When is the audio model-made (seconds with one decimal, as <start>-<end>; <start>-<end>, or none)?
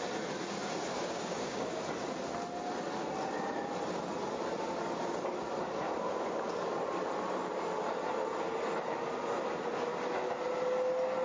0.9-1.8